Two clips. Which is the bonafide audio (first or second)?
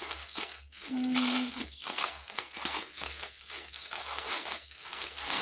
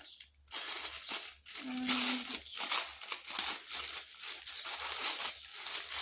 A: second